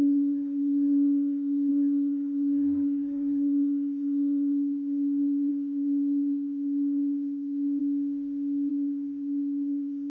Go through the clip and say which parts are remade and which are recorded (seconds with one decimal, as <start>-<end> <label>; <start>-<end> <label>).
0.0-7.8 remade; 7.8-8.7 recorded; 8.7-10.1 remade